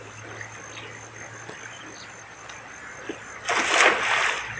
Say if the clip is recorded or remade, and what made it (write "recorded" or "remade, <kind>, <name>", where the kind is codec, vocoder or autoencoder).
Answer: recorded